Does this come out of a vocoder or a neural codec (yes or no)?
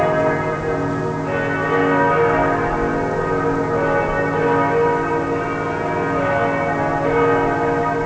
no